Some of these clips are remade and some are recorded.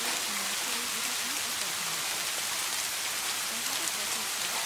recorded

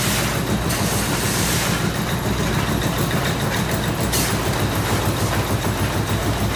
recorded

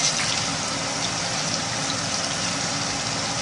recorded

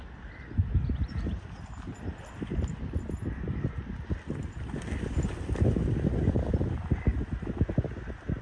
recorded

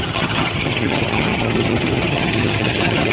remade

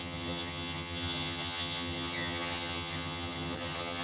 remade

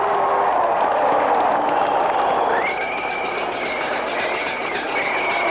recorded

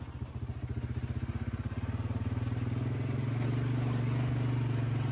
recorded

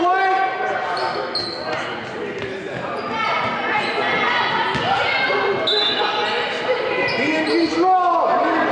recorded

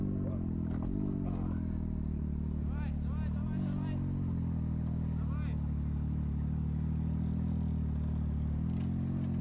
recorded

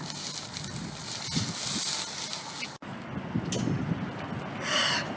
recorded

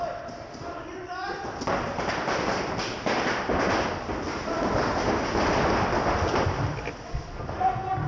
recorded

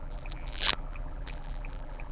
remade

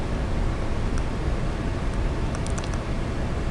remade